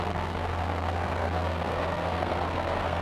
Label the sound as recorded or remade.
remade